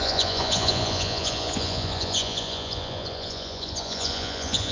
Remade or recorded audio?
remade